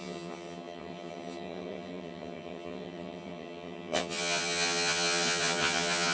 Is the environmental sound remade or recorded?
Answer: remade